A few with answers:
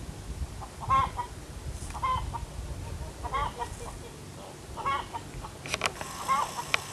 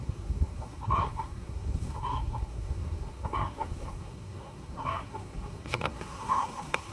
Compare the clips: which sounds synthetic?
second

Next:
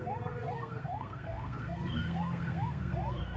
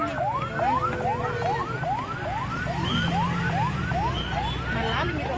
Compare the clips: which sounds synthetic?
first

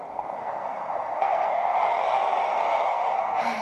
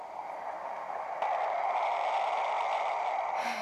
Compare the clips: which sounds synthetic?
first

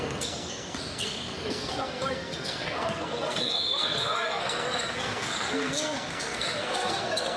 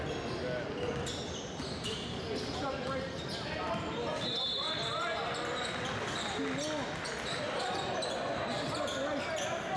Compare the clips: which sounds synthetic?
first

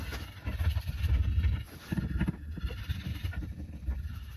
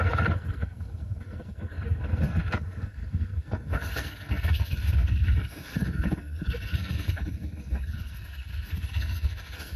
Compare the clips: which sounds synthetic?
second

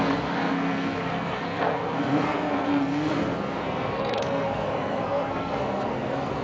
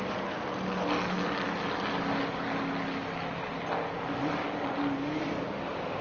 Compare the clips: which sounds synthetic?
first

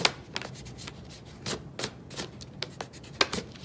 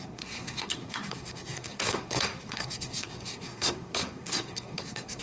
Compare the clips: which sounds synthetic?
second